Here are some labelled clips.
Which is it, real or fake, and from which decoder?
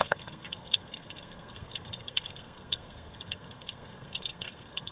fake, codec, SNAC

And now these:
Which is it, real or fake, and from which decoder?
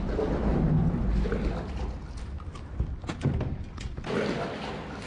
real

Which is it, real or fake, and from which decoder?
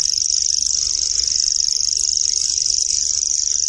real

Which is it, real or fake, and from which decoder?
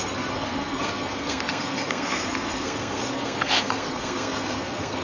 fake, codec, SNAC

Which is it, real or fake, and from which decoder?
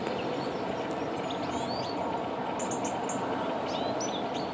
real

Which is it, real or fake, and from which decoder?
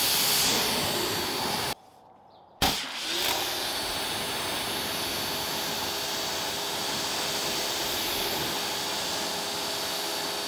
real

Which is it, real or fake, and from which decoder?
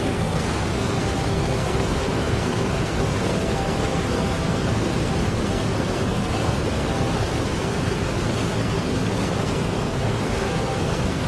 fake, codec, SNAC